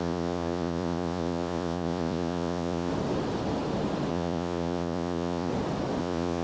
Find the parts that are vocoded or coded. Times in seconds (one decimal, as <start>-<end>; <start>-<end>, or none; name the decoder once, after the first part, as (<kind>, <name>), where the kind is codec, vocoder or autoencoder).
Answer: 0.0-2.9 (vocoder, Vocos); 4.1-5.5; 6.0-6.4